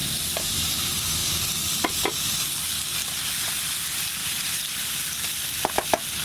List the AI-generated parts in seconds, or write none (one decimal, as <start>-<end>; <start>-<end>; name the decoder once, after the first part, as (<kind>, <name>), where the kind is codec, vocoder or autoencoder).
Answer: 0.0-0.7 (vocoder, BigVGAN v2); 1.2-1.9; 3.0-3.6; 4.2-4.9

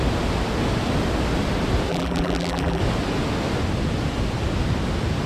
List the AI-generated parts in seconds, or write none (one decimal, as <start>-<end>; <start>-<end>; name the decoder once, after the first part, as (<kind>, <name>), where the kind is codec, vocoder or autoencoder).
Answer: 1.9-2.8 (vocoder, BigVGAN v2)

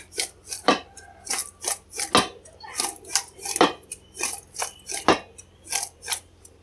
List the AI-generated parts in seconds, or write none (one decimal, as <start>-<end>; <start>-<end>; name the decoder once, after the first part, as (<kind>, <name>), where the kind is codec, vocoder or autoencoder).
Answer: 0.0-1.4 (vocoder, BigVGAN v2); 5.4-6.6

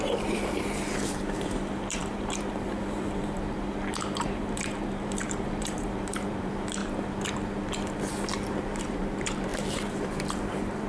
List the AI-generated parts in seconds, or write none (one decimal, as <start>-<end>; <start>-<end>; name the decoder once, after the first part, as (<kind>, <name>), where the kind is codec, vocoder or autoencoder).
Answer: 0.0-6.8 (vocoder, BigVGAN v2); 8.8-10.9

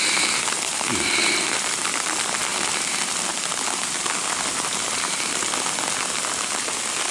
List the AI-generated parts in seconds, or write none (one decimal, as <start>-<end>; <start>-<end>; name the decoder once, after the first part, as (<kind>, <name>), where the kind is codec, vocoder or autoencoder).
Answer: none

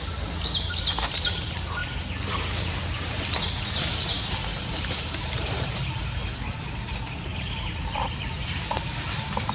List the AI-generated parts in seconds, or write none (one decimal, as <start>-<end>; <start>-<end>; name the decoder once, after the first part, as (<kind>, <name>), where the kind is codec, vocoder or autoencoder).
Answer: 4.5-6.0 (vocoder, BigVGAN v2); 7.3-8.5